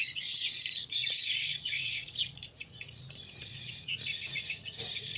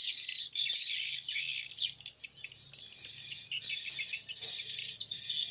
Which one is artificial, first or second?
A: first